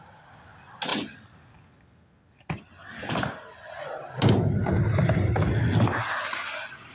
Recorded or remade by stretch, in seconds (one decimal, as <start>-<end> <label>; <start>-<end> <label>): 0.0-6.9 recorded